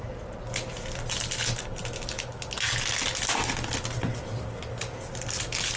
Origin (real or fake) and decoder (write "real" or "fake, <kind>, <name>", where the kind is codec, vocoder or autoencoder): real